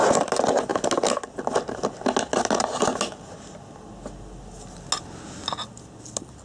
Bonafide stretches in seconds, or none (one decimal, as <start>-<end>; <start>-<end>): 0.0-6.4